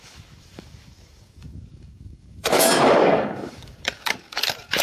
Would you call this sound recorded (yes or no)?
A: no